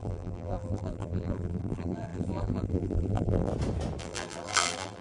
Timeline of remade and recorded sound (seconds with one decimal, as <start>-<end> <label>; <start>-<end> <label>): 0.0-3.5 remade; 3.5-4.0 recorded; 4.0-5.0 remade